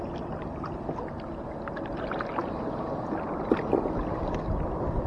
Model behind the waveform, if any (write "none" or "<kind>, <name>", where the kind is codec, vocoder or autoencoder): none